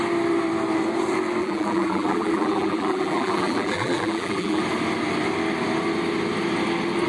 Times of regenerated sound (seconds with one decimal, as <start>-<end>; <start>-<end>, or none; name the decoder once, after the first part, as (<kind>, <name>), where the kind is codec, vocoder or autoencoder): 1.4-4.6 (vocoder, BigVGAN v2)